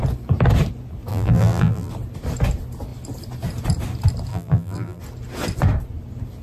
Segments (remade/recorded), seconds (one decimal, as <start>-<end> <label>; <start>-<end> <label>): 0.0-1.1 recorded; 1.1-1.9 remade; 1.9-4.3 recorded; 4.3-5.0 remade; 5.0-6.4 recorded